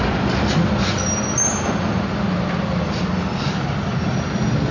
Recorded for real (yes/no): yes